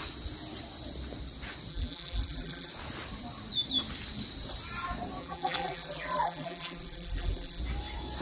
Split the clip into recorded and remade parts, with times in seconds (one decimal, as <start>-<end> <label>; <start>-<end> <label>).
0.0-1.7 recorded; 1.7-2.7 remade; 2.7-5.2 recorded; 5.2-7.6 remade; 7.6-8.2 recorded